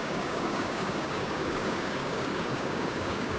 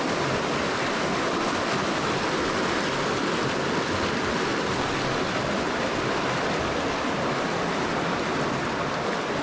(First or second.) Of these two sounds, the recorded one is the second